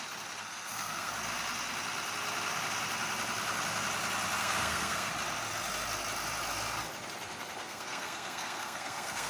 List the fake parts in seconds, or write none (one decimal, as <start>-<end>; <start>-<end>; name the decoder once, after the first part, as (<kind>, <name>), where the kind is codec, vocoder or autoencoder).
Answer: 0.4-1.1 (codec, SNAC); 4.4-5.1; 7.6-9.3